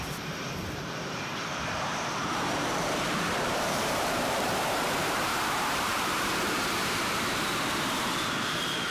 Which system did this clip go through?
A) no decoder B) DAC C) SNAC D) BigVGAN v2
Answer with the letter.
D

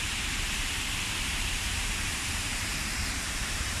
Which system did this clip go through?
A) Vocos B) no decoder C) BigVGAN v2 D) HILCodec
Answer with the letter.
C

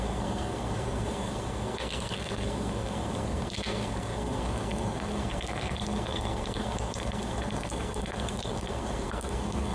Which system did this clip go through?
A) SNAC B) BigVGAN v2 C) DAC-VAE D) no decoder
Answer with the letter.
A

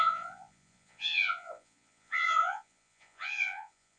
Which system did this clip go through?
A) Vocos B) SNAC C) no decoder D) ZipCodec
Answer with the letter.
A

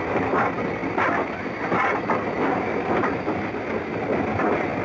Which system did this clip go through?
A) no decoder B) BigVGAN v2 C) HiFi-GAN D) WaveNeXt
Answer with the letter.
B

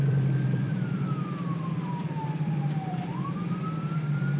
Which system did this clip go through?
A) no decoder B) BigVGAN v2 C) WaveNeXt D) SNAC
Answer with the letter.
B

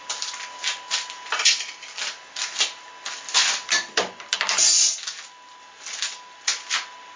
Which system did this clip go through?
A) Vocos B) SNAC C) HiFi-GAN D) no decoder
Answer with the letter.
D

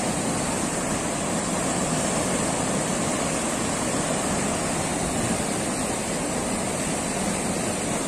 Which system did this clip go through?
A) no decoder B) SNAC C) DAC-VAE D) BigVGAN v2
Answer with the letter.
A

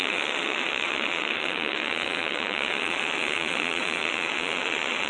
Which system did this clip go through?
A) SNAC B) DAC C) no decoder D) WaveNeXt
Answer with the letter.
D